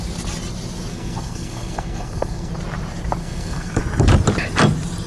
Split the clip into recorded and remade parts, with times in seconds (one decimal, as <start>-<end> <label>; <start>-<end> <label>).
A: 0.0-0.9 recorded; 0.9-2.5 remade; 2.5-3.2 recorded; 3.2-3.8 remade; 3.8-5.1 recorded